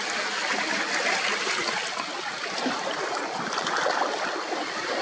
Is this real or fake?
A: real